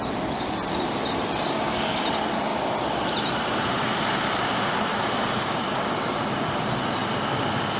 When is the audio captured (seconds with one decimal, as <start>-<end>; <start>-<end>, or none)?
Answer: 0.0-1.4; 2.0-4.9; 5.8-7.8